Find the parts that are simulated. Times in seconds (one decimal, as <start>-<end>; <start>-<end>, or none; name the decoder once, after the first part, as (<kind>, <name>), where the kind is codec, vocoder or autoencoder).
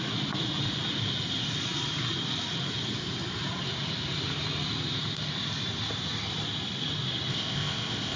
7.3-8.2 (codec, ZipCodec)